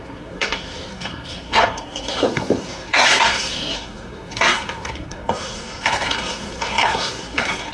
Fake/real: fake